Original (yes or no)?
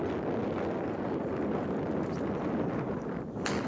yes